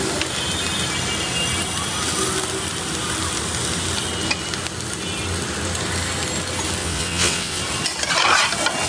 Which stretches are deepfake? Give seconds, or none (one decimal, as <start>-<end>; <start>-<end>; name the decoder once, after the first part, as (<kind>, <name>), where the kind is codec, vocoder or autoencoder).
6.8-7.6 (vocoder, WaveNeXt)